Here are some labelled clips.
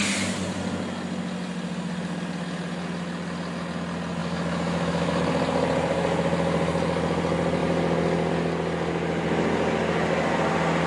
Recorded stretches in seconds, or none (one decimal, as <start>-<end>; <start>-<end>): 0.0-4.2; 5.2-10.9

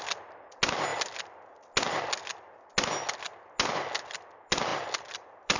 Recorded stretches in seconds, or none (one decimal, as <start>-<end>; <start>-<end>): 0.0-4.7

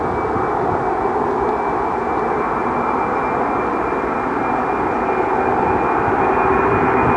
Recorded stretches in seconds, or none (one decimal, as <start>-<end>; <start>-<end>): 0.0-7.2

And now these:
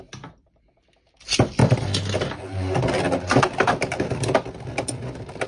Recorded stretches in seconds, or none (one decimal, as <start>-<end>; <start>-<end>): 0.0-5.5

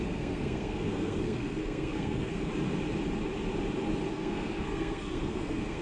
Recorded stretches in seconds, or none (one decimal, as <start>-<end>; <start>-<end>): 2.5-4.1